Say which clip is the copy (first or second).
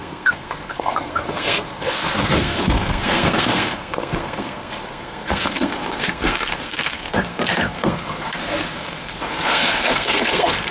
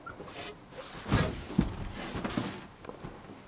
first